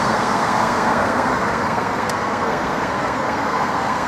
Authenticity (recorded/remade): remade